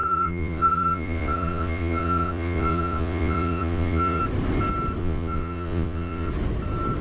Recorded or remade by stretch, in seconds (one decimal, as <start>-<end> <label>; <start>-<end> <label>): 0.0-4.2 remade; 4.2-5.0 recorded; 5.0-6.3 remade; 6.3-7.0 recorded